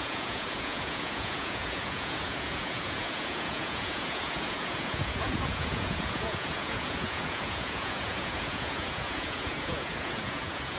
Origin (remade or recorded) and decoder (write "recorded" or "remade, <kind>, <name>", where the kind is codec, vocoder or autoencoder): remade, vocoder, Vocos